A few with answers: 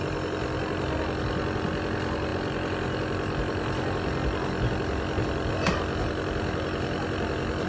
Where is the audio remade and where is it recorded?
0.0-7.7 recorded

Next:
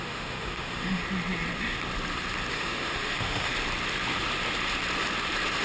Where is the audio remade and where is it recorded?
0.0-1.0 remade; 1.0-2.5 recorded; 2.5-3.5 remade; 3.5-5.6 recorded

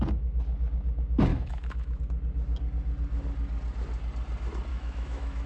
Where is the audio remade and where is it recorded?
0.0-1.3 recorded; 1.3-2.0 remade; 2.0-4.7 recorded; 4.7-5.5 remade